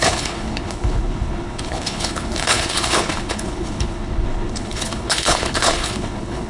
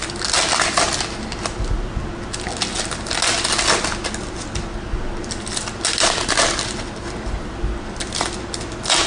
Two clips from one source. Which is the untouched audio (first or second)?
second